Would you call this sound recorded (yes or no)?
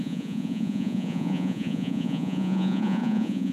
no